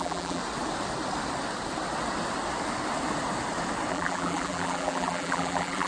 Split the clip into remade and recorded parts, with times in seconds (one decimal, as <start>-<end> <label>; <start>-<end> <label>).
0.0-0.4 remade; 0.4-3.9 recorded; 3.9-5.9 remade